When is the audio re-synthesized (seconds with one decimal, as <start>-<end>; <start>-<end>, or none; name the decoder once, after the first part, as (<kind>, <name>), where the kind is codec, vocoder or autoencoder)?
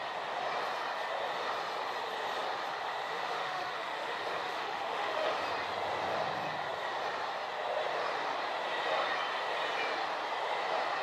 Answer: 3.1-5.4 (autoencoder, DAC-VAE)